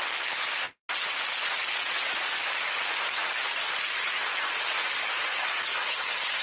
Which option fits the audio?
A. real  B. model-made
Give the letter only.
A